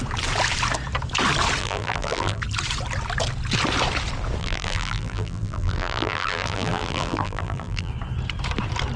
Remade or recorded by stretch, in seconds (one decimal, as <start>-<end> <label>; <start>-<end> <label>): 0.0-1.6 recorded; 1.6-2.4 remade; 2.4-4.4 recorded; 4.4-7.9 remade; 7.9-9.0 recorded